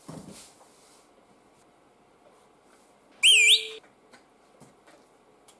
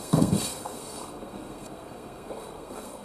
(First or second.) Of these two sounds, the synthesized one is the second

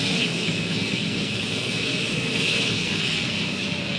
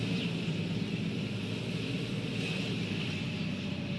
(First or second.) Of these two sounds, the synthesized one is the first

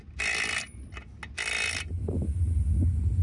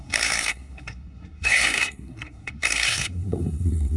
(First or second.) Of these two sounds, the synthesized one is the second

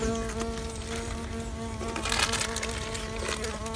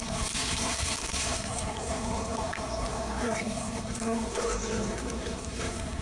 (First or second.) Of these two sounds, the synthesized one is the second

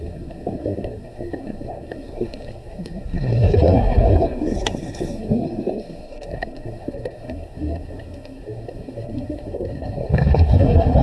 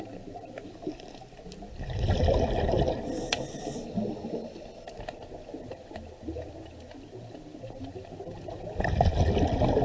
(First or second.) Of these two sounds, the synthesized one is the first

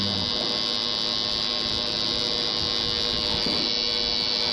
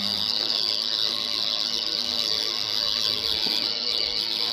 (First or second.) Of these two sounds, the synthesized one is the second